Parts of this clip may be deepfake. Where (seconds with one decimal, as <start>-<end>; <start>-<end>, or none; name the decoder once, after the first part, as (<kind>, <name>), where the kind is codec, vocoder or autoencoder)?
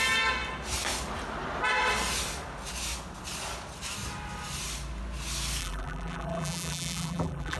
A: 5.6-7.6 (vocoder, BigVGAN v2)